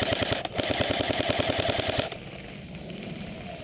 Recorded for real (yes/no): yes